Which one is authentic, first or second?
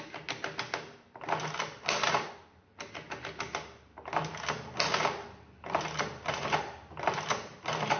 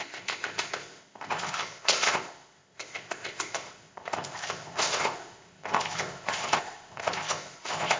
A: first